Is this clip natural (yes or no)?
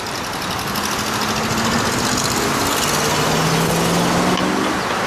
yes